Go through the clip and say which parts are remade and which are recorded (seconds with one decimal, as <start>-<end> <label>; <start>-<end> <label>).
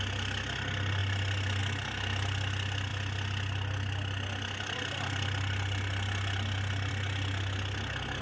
0.0-8.2 recorded